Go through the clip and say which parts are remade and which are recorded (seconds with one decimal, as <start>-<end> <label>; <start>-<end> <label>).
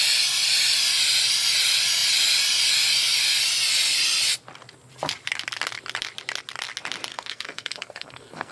0.0-7.1 recorded; 7.1-8.5 remade